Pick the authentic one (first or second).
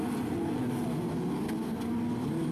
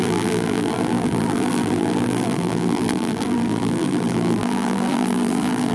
first